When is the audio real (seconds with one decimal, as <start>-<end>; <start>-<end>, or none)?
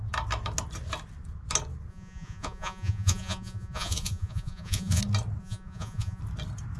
0.0-1.9; 5.0-5.4; 6.2-6.8